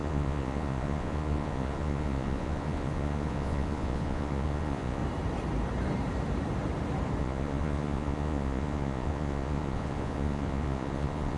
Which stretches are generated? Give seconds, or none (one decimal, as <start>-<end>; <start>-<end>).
0.0-5.0; 7.2-11.4